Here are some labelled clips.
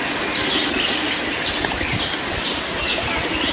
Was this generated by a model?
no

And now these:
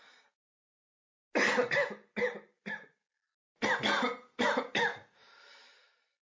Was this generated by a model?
no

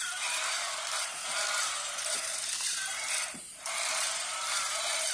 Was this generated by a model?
yes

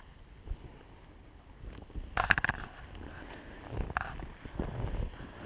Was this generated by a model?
no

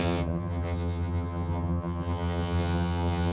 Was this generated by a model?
yes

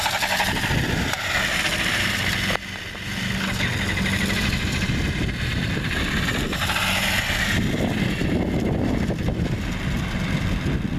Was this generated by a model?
no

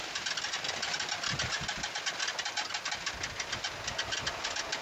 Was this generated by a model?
no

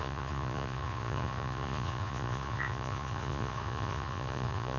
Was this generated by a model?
yes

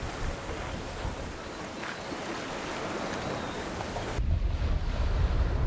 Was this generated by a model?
no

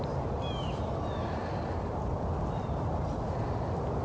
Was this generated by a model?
no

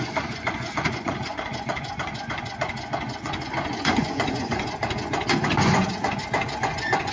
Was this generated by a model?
yes